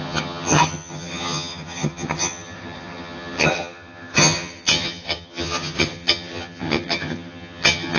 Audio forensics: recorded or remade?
remade